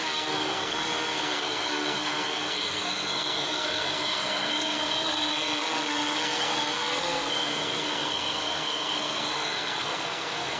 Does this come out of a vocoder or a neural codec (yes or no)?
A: yes